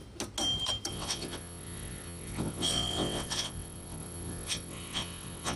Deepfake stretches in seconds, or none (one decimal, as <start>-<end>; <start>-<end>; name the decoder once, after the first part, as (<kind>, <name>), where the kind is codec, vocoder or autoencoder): 0.9-5.6 (vocoder, WaveNeXt)